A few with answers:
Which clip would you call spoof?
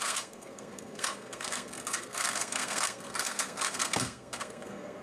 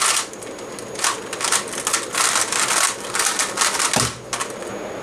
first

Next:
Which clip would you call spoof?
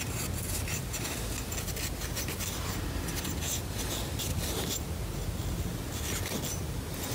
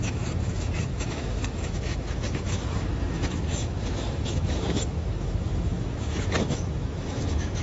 second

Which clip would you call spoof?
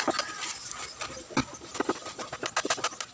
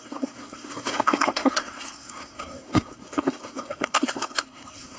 second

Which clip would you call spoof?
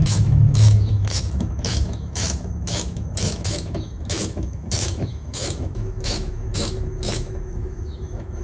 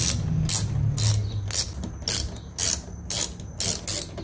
first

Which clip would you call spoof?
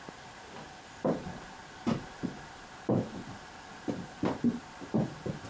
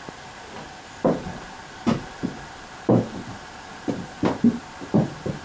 first